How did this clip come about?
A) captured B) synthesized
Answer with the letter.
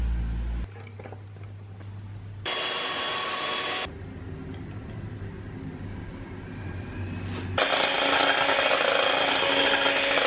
A